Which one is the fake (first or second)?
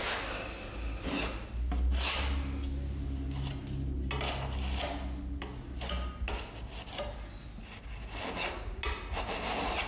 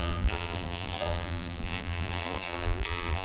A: second